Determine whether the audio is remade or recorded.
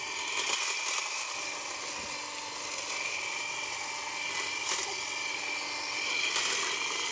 recorded